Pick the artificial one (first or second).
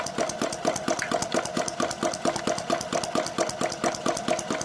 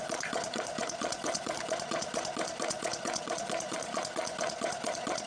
second